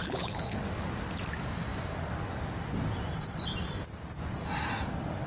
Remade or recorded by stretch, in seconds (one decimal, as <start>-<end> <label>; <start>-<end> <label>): 0.0-0.6 remade; 0.6-5.3 recorded